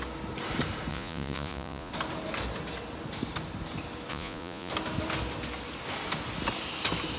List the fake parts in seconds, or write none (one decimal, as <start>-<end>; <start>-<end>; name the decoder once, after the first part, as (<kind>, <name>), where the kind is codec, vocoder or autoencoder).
0.9-1.9 (vocoder, Vocos); 4.1-4.7